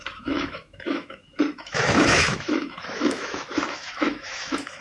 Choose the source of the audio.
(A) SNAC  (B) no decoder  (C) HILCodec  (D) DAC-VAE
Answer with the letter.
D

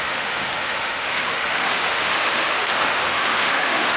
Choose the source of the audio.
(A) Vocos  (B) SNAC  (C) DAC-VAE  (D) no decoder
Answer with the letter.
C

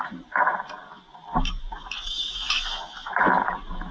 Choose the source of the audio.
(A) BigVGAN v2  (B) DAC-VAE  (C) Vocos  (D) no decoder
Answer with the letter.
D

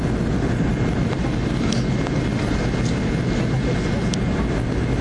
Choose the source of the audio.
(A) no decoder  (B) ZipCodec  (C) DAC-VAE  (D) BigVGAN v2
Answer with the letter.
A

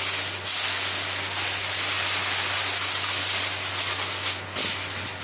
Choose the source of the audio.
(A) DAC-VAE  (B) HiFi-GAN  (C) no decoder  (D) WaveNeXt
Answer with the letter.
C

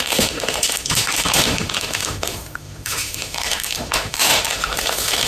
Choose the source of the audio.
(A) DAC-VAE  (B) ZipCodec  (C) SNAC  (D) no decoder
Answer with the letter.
A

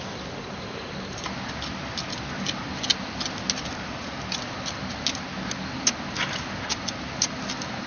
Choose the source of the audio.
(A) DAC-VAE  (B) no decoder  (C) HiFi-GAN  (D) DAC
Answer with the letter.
B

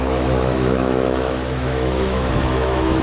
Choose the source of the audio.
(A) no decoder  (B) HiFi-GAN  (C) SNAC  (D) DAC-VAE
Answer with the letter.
D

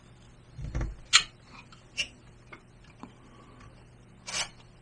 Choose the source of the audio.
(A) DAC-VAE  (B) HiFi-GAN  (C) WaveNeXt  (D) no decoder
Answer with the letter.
D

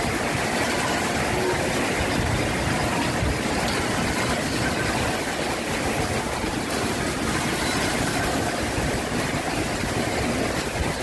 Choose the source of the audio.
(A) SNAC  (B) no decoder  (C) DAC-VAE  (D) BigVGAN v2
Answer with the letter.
B